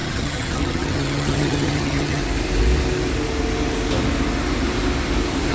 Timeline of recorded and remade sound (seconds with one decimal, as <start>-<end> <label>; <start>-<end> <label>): 0.0-2.2 remade; 2.2-5.5 recorded

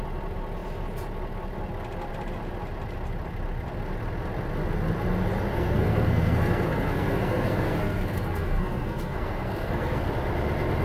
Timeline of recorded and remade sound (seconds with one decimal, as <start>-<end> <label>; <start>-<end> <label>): 0.0-5.5 recorded; 5.5-10.1 remade; 10.1-10.8 recorded

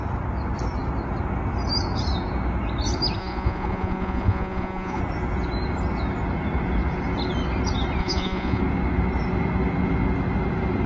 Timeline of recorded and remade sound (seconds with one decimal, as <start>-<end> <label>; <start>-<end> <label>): 0.0-3.2 recorded; 3.2-5.0 remade; 5.0-8.0 recorded; 8.0-8.6 remade; 8.6-10.9 recorded

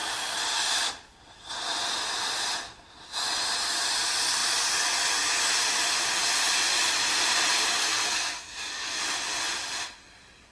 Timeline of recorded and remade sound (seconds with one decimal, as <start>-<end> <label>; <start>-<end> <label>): 0.0-7.8 recorded; 7.8-9.0 remade; 9.0-10.5 recorded

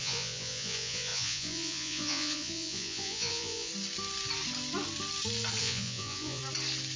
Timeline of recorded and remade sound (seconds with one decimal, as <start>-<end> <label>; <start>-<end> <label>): 0.0-3.7 remade; 3.7-5.6 recorded; 5.6-6.4 remade; 6.4-7.0 recorded

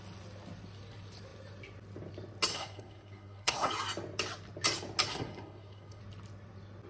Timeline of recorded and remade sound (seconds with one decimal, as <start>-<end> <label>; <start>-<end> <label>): 0.0-2.5 recorded; 2.5-3.7 remade; 3.7-5.1 recorded; 5.1-6.0 remade; 6.0-6.9 recorded

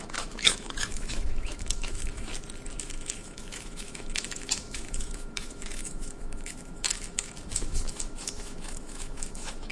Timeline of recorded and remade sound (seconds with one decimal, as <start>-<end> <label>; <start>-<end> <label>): 0.0-2.3 remade; 2.3-2.8 recorded; 2.8-9.7 remade

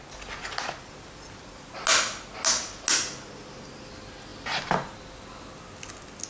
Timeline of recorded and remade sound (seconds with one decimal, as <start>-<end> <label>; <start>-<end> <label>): 0.0-6.3 recorded